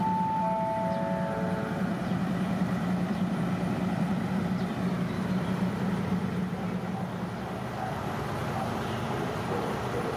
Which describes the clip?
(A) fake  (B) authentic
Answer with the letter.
B